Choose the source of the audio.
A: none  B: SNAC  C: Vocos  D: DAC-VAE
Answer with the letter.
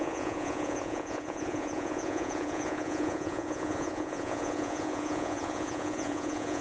C